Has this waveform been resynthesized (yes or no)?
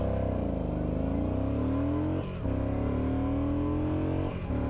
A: no